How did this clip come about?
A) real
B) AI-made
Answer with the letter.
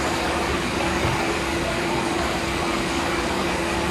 B